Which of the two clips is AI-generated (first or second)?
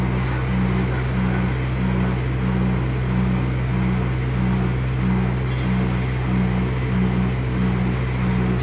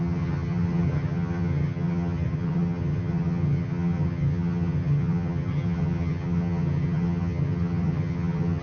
second